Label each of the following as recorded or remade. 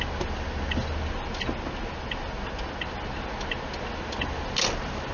recorded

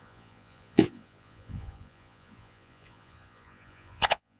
remade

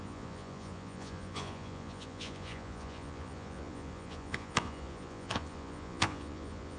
remade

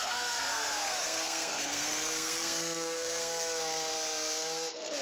remade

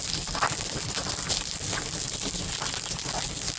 recorded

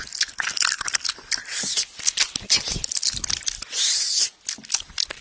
recorded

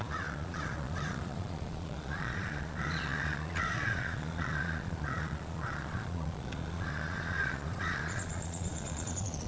remade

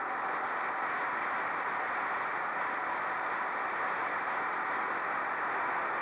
recorded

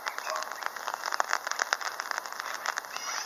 recorded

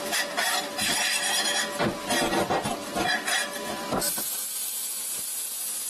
recorded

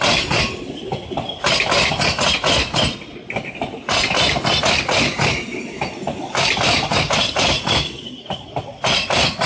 recorded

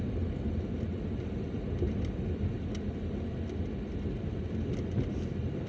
recorded